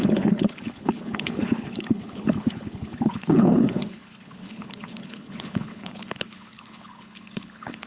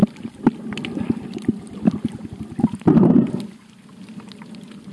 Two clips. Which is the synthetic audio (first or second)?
first